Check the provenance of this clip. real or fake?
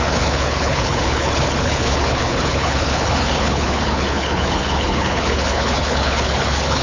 fake